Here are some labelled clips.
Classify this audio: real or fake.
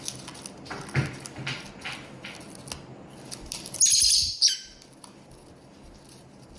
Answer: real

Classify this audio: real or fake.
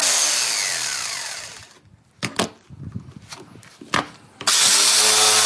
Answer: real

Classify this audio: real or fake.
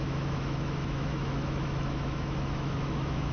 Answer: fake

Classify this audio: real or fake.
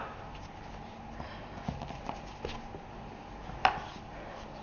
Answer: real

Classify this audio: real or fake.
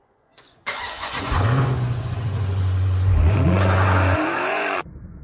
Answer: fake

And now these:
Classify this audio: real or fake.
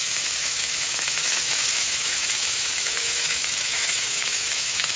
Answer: fake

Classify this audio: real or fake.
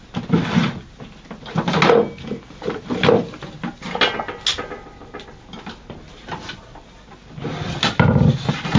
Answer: real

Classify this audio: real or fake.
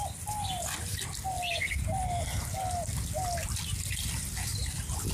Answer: real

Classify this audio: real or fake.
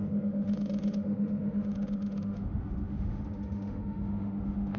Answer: fake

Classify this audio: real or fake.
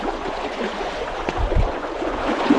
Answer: fake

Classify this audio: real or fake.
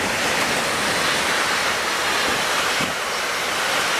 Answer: real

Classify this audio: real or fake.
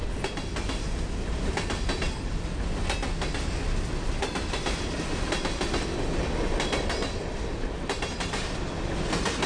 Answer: real